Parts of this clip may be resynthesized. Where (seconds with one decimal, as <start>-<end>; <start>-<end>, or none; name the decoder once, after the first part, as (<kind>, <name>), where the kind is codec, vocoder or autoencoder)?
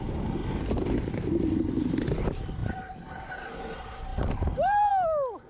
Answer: 2.6-3.5 (vocoder, BigVGAN v2); 4.1-4.9